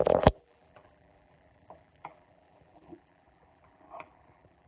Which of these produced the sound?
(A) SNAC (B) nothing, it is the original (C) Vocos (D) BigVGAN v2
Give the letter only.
D